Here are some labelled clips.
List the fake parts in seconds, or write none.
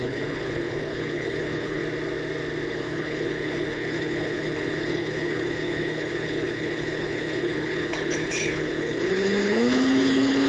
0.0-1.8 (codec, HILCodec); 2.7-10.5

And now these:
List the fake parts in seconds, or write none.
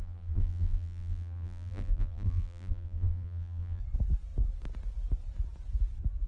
0.0-3.8 (vocoder, BigVGAN v2)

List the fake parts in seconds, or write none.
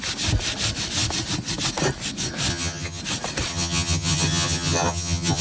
2.5-3.0 (vocoder, HiFi-GAN); 3.5-5.4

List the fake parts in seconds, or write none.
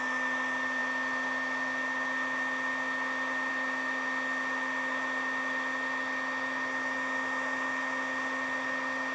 none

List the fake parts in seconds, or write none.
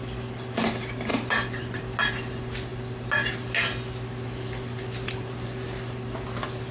none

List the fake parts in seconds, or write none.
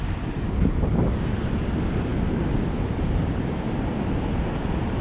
none